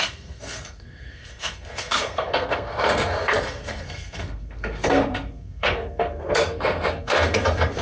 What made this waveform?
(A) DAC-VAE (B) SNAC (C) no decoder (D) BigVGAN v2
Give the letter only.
B